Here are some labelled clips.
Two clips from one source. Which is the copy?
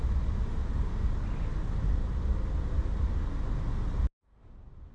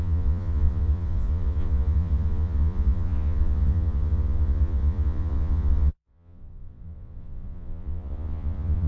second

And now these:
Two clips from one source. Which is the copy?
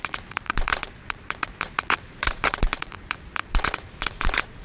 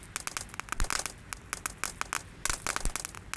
first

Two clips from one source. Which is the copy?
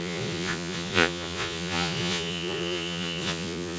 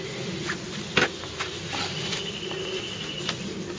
first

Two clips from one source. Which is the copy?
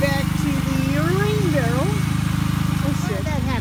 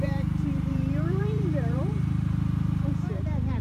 second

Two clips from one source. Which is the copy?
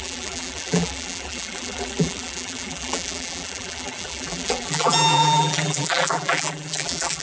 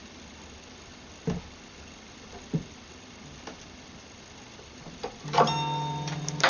first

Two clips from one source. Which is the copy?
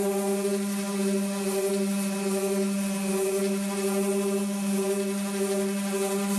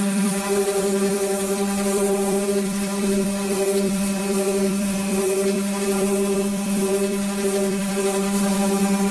second